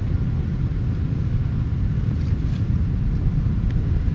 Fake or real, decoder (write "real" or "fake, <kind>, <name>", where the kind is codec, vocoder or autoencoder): real